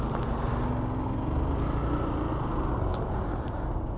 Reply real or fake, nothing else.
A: real